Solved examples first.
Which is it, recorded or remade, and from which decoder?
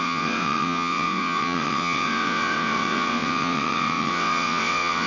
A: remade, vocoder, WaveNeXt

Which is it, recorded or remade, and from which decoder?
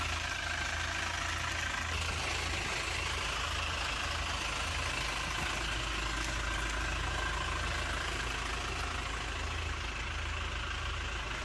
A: recorded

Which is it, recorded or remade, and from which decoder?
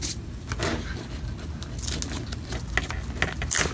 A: recorded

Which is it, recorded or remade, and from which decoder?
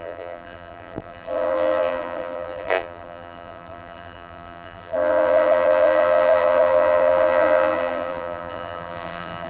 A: remade, vocoder, BigVGAN v2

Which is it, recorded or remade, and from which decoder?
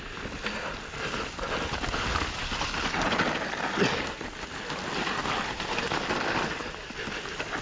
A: recorded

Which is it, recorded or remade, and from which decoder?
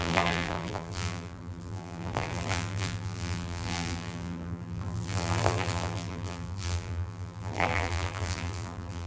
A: remade, vocoder, BigVGAN v2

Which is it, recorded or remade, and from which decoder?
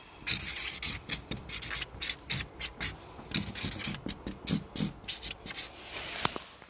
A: recorded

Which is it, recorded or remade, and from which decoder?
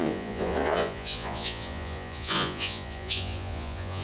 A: remade, vocoder, Vocos